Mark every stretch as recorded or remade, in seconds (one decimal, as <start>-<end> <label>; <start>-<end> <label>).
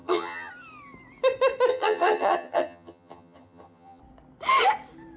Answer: 0.0-0.5 remade; 0.5-1.7 recorded; 1.7-4.0 remade; 4.0-5.2 recorded